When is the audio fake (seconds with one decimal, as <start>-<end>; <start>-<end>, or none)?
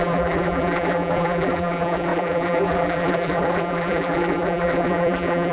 0.0-5.5